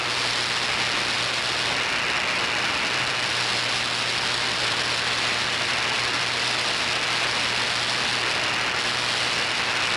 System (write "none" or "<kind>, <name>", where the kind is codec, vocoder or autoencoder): none